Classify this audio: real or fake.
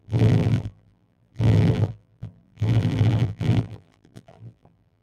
fake